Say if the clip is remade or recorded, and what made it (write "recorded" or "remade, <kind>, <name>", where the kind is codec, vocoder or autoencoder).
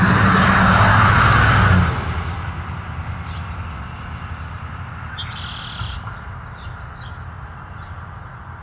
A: recorded